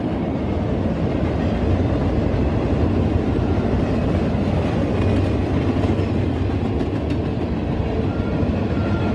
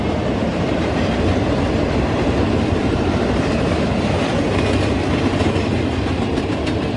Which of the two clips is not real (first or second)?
second